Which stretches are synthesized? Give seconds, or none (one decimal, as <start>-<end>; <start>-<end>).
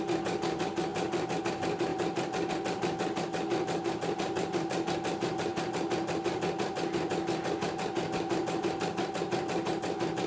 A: none